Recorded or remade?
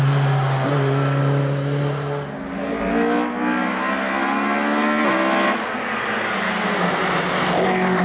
recorded